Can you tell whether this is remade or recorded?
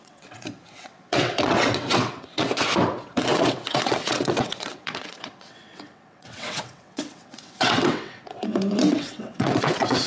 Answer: remade